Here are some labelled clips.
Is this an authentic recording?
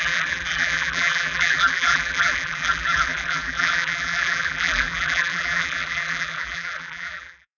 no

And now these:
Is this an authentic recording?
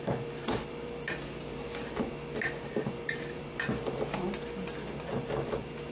no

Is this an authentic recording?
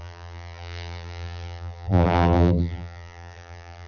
no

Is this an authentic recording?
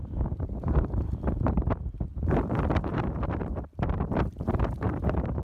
no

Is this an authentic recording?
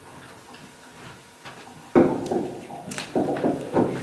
yes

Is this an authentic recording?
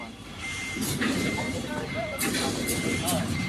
no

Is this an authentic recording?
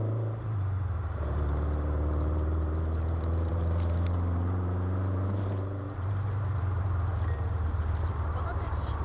no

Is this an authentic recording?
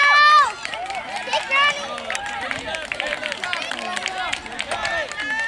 yes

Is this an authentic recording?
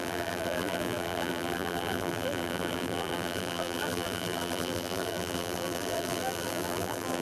no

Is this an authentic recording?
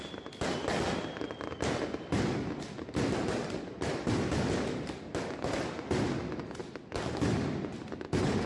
yes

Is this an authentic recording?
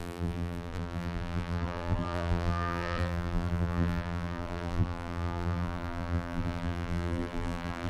no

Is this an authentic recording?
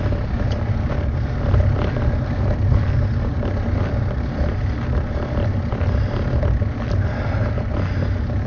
yes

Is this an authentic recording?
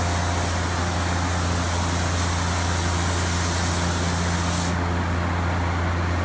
yes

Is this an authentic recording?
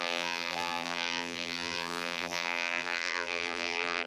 no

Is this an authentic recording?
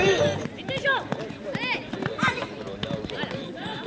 yes